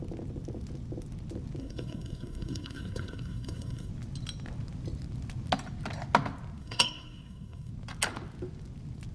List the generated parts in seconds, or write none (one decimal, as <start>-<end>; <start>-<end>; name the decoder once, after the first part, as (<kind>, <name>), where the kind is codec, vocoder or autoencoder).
1.6-3.9 (codec, SNAC); 6.6-7.7